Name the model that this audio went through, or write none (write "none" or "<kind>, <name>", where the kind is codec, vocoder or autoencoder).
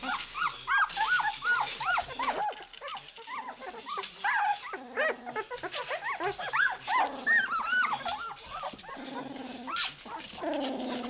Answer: none